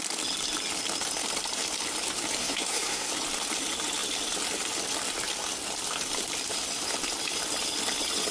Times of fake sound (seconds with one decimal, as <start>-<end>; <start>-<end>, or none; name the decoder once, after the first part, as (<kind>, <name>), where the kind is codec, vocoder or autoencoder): 2.4-3.1 (codec, SNAC)